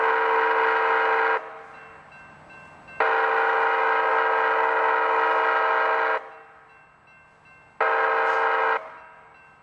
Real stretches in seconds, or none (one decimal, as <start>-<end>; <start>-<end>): 0.0-9.6